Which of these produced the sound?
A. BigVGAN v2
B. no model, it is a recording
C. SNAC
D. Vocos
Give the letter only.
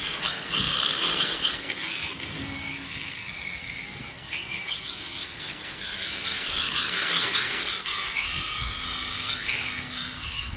C